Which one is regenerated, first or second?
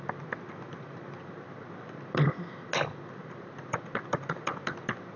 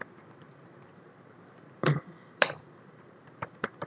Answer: second